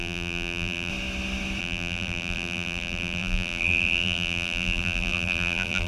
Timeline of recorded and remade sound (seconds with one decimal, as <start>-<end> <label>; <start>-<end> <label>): 0.0-0.9 remade; 0.9-1.6 recorded; 1.6-5.9 remade